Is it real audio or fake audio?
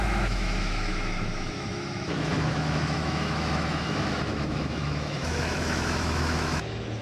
fake